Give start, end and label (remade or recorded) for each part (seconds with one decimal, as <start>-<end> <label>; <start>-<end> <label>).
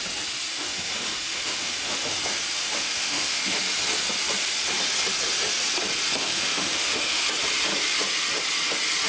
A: 0.0-0.5 recorded; 0.5-2.2 remade; 2.2-2.6 recorded; 2.6-3.6 remade; 3.6-6.2 recorded; 6.2-7.3 remade; 7.3-9.1 recorded